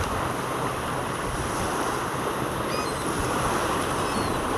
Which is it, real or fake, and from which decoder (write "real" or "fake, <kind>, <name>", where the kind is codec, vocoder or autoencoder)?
real